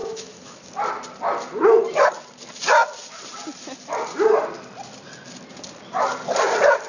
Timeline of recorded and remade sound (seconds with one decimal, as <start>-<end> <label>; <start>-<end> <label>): 0.0-0.7 remade; 0.7-6.9 recorded